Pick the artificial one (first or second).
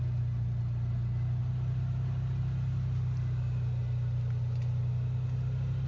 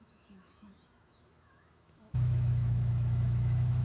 second